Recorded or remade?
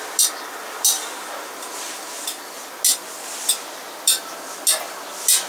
recorded